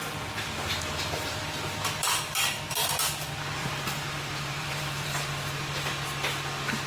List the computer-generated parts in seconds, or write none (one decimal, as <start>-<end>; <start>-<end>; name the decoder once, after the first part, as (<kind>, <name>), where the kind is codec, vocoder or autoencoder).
3.6-5.2 (vocoder, BigVGAN v2)